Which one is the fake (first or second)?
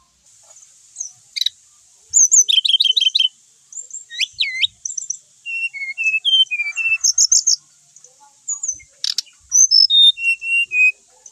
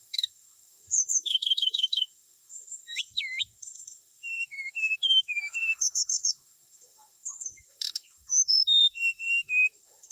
second